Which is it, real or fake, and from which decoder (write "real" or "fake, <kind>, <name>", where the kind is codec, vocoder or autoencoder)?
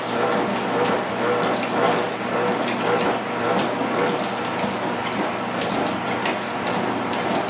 real